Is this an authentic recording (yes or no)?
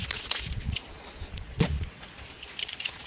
no